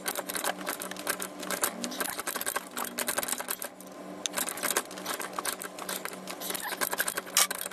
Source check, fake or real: real